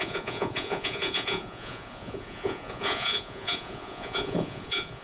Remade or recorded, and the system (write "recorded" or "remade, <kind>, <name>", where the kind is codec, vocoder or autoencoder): remade, vocoder, Vocos